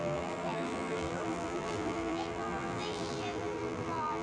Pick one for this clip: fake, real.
fake